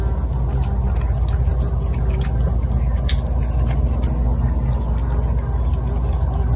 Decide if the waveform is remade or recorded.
recorded